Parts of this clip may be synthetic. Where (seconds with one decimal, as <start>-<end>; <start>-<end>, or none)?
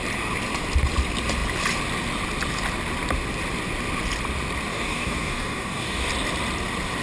4.7-6.1